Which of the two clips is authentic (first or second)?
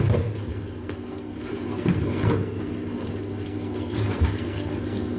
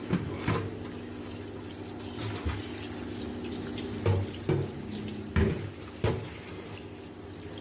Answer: second